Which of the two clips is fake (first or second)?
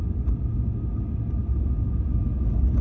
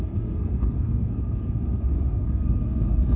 second